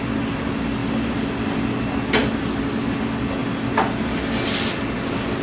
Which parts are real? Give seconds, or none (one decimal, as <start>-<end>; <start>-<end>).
0.0-5.4